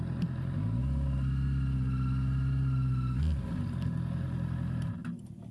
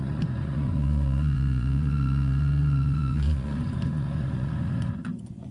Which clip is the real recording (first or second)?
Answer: first